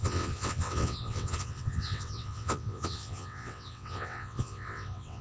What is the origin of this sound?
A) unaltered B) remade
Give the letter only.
B